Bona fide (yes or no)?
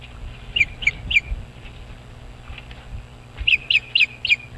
yes